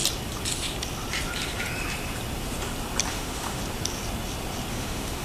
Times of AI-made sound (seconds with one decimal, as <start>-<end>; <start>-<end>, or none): 3.1-3.6; 4.7-5.2